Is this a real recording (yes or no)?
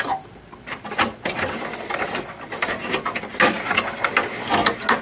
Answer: yes